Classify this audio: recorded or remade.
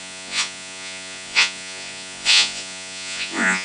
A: remade